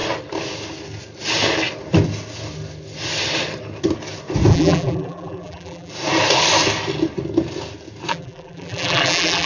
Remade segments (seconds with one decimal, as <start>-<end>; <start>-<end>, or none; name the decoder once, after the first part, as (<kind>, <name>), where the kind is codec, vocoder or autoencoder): 4.5-5.9 (vocoder, BigVGAN v2); 8.1-9.5